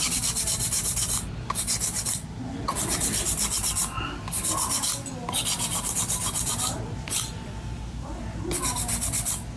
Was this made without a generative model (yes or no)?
yes